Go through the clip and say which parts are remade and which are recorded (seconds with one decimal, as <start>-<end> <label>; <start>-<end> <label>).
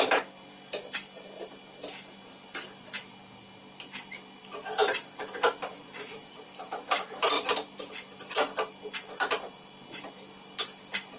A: 0.0-5.6 recorded; 5.6-7.9 remade; 7.9-11.2 recorded